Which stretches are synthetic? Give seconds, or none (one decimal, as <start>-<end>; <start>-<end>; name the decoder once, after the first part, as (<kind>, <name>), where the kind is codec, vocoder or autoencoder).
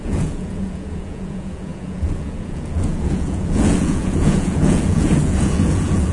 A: 0.0-6.1 (vocoder, Vocos)